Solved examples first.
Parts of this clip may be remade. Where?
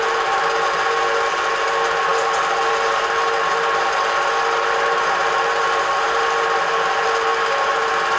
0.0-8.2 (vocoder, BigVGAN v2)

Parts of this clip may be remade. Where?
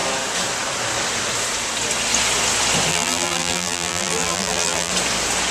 2.9-4.9 (vocoder, BigVGAN v2)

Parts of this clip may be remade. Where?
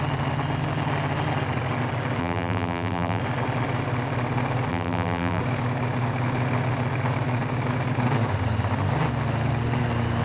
2.2-3.2 (vocoder, BigVGAN v2); 4.7-5.4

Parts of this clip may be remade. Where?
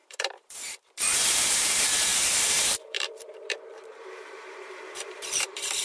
0.0-5.8 (vocoder, BigVGAN v2)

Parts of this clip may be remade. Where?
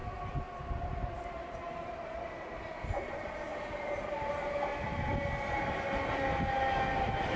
0.8-4.7 (vocoder, BigVGAN v2); 7.0-7.4